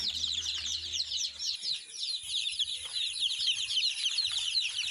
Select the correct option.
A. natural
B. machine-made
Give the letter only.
B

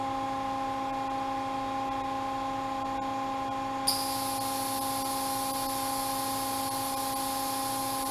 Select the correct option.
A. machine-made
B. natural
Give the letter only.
B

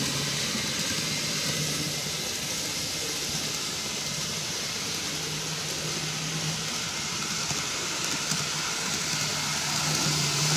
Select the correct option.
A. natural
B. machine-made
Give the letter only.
A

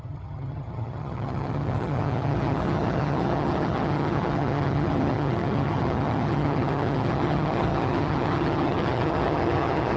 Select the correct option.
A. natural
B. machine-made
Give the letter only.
B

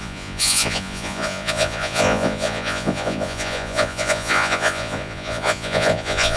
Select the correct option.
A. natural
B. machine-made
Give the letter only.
B